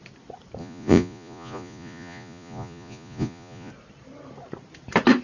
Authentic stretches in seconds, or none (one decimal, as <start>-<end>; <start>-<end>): 0.0-0.6; 3.7-5.2